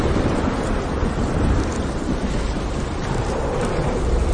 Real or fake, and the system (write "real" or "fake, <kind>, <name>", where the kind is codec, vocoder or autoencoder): real